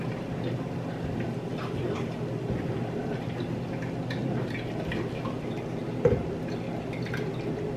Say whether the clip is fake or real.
real